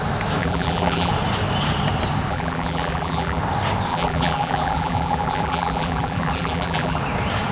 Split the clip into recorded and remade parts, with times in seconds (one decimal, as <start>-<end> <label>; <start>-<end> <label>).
0.0-0.4 recorded; 0.4-1.1 remade; 1.1-2.3 recorded; 2.3-3.4 remade; 3.4-3.9 recorded; 3.9-7.0 remade; 7.0-7.5 recorded